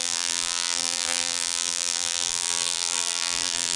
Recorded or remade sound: remade